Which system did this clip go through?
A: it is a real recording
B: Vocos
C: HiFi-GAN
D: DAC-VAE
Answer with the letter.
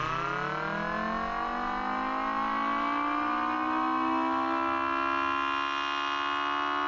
A